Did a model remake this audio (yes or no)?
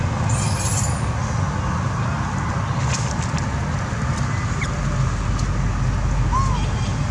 no